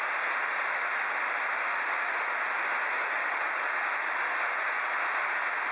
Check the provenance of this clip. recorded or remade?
recorded